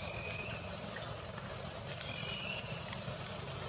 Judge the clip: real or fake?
real